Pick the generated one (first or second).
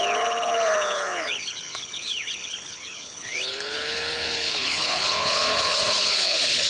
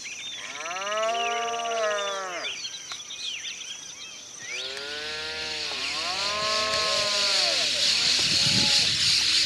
first